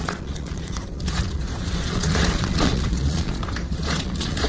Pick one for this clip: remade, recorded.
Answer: remade